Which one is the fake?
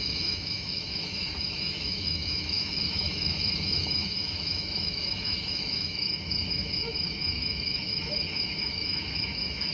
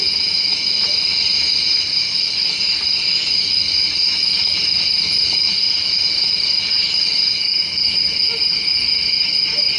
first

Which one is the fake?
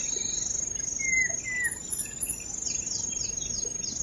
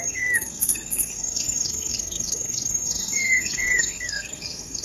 second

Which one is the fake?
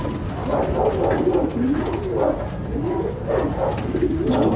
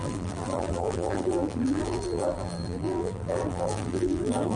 second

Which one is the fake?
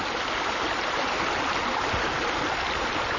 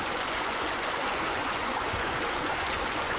second